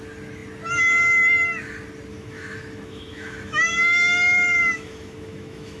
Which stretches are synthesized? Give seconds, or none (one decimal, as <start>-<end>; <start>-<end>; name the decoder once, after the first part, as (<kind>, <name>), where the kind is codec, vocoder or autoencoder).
2.1-5.8 (autoencoder, DAC-VAE)